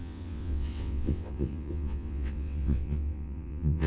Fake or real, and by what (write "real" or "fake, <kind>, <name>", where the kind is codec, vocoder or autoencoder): fake, vocoder, WaveNeXt